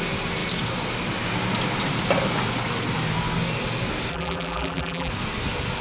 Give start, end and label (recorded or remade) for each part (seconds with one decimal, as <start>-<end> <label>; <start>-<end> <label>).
0.0-4.1 recorded; 4.1-5.1 remade; 5.1-5.8 recorded